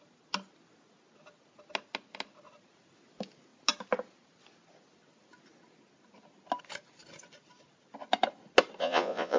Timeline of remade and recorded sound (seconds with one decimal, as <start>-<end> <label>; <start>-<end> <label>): 0.0-8.8 recorded; 8.8-9.4 remade